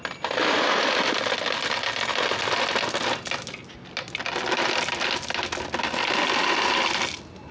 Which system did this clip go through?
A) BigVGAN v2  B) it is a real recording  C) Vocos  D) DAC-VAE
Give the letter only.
B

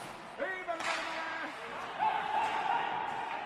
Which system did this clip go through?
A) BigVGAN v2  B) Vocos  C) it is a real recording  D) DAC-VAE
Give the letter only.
C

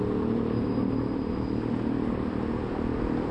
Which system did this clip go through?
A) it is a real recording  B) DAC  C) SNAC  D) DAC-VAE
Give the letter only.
A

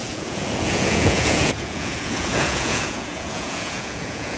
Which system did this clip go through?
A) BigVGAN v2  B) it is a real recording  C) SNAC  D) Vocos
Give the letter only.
D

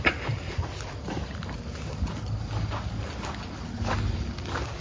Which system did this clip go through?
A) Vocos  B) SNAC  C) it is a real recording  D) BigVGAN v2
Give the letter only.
C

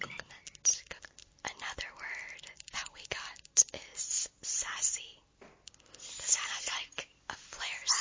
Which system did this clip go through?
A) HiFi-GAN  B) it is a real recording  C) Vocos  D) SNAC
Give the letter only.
B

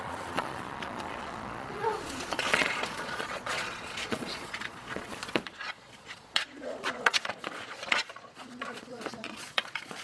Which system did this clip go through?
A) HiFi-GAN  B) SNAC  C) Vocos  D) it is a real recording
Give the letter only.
C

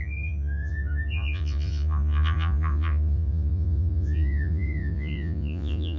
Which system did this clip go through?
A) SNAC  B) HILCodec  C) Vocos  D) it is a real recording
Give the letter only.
C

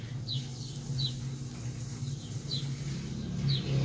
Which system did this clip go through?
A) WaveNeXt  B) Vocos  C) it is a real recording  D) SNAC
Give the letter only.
C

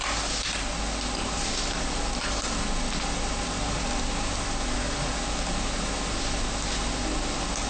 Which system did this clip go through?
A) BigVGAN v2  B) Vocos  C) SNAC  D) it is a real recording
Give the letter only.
D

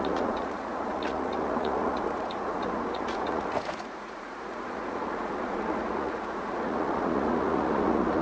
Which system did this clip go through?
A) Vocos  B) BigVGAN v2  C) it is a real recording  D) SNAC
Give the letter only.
A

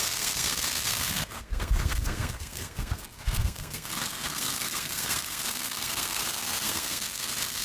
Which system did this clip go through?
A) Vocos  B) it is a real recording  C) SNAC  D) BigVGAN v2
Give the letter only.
C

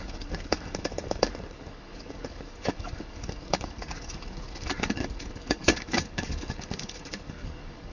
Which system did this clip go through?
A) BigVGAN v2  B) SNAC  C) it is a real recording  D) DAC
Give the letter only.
D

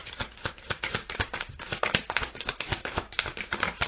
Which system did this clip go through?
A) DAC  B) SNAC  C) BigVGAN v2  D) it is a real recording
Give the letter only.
C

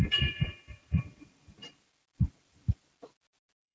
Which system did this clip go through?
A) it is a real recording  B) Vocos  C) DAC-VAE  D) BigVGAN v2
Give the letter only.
D